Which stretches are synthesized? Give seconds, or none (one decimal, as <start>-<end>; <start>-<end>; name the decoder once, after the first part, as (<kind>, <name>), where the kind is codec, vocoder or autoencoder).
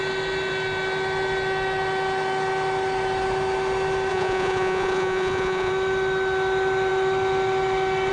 4.1-5.7 (vocoder, Vocos)